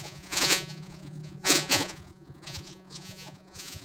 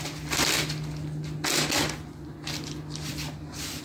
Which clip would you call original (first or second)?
second